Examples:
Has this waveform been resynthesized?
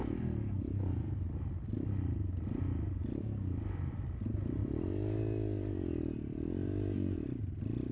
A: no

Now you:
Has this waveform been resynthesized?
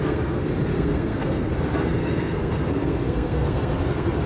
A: yes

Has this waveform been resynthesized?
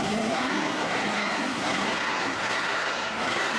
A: yes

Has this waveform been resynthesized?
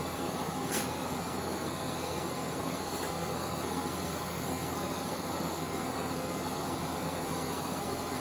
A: yes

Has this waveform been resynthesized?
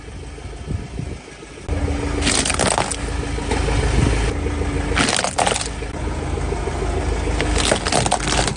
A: no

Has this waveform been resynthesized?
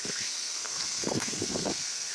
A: yes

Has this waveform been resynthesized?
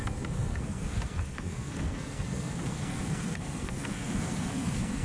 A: yes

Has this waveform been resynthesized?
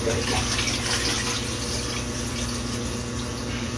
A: no